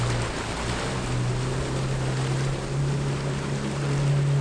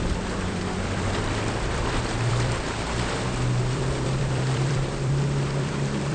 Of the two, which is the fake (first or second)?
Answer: second